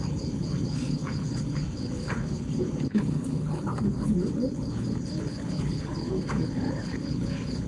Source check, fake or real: fake